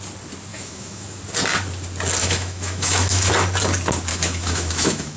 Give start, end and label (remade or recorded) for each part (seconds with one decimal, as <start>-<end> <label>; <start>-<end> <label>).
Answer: 0.0-0.5 recorded; 0.5-1.2 remade; 1.2-2.2 recorded; 2.2-3.3 remade; 3.3-4.1 recorded; 4.1-5.2 remade